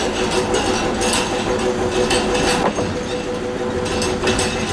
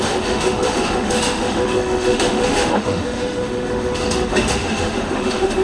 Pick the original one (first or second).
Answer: first